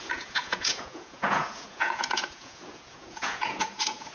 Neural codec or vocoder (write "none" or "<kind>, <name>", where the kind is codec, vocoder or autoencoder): vocoder, Vocos